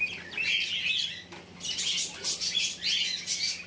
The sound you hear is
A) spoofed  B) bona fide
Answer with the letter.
B